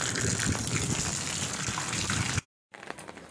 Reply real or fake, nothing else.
real